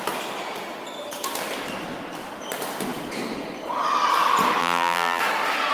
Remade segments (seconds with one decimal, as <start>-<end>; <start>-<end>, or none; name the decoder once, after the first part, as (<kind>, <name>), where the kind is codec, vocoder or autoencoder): 4.6-5.2 (vocoder, BigVGAN v2)